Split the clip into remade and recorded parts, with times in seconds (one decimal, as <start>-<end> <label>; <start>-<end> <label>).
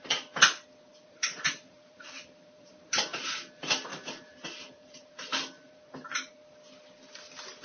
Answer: 0.0-0.9 recorded; 0.9-3.0 remade; 3.0-3.9 recorded; 3.9-6.4 remade; 6.4-7.6 recorded